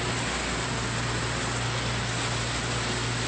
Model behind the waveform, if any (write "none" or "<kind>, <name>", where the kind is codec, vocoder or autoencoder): none